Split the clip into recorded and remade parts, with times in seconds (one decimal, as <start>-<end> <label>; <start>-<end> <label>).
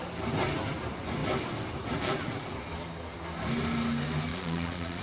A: 0.0-4.3 recorded; 4.3-5.0 remade